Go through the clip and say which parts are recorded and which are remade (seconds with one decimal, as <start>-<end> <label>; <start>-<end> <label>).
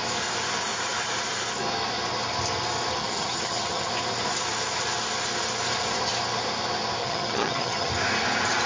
0.0-3.0 recorded; 3.0-3.9 remade; 3.9-7.0 recorded; 7.0-7.9 remade; 7.9-8.7 recorded